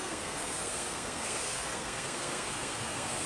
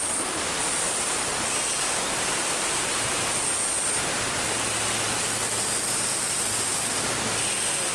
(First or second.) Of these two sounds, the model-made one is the first